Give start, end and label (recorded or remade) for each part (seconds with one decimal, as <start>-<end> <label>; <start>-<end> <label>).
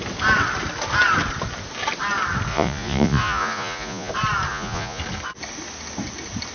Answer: 0.0-2.5 recorded; 2.5-4.1 remade; 4.1-4.5 recorded; 4.5-5.0 remade; 5.0-6.5 recorded